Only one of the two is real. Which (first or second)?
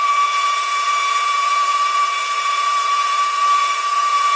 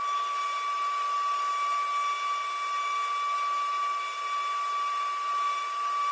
second